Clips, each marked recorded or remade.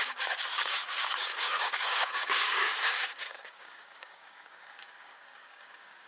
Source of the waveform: remade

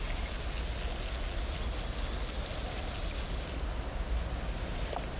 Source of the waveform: recorded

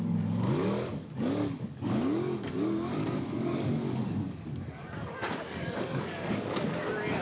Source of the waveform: remade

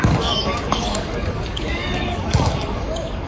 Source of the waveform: remade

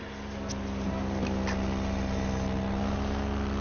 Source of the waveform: recorded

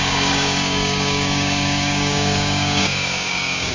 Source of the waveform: remade